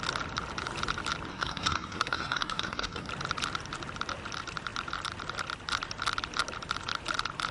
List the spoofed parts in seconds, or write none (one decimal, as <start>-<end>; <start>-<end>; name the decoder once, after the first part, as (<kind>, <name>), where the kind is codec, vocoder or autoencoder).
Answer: 1.3-3.1 (codec, SNAC)